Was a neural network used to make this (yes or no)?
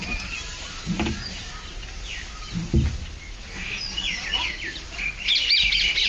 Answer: no